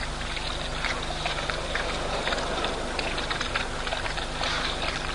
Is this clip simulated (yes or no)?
no